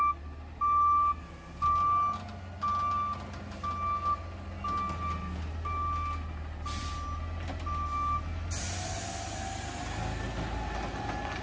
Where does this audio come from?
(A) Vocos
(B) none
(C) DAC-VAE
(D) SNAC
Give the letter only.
B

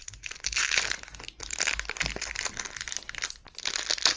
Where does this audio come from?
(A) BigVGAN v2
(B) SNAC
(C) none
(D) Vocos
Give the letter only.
C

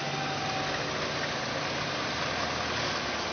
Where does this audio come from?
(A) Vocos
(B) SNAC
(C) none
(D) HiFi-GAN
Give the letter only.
C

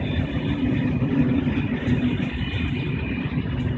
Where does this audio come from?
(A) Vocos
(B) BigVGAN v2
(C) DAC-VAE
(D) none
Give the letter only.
D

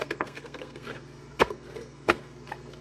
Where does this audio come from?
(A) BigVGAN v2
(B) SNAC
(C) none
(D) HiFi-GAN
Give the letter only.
B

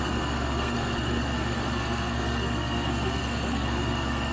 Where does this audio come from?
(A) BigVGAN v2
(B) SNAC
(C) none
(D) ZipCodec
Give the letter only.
B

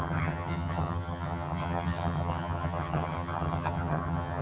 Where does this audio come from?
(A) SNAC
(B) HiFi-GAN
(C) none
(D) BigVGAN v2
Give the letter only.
B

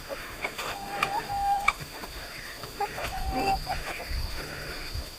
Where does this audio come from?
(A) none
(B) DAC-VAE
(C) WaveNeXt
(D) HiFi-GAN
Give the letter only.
B